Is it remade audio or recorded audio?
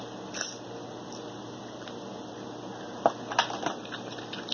recorded